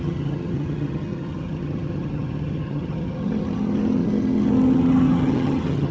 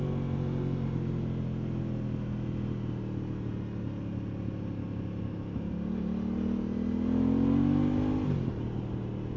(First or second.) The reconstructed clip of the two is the first